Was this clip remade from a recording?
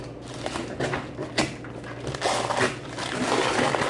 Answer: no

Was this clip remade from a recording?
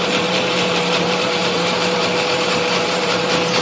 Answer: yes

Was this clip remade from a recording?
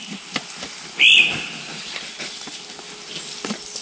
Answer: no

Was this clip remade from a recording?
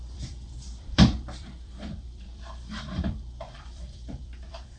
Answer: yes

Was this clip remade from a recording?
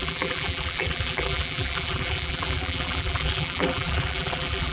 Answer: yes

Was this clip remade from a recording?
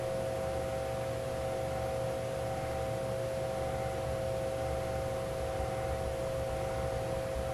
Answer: no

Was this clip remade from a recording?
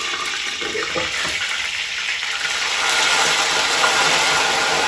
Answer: no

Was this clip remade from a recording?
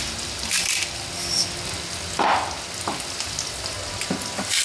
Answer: no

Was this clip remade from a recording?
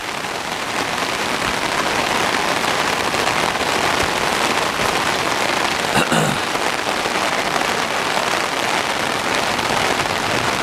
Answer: yes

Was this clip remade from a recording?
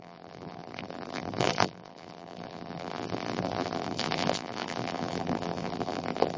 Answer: yes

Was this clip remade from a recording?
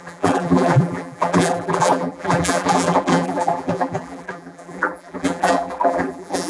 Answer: yes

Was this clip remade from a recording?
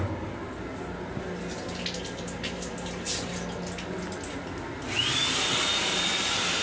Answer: no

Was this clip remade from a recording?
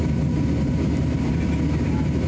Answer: no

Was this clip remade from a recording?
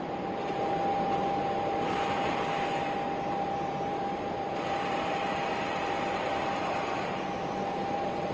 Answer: yes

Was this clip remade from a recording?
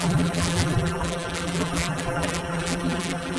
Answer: yes